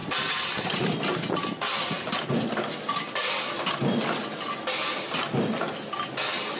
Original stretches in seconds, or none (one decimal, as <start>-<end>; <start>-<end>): 0.0-6.6